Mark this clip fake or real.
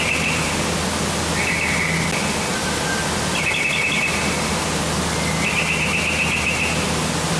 real